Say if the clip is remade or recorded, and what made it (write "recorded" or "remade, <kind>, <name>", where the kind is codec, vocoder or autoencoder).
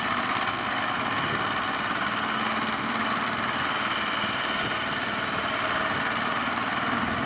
recorded